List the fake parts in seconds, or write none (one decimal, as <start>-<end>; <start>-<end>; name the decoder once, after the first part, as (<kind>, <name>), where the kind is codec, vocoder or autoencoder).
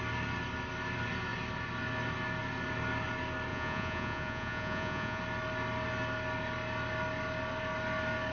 3.5-5.2 (vocoder, Vocos)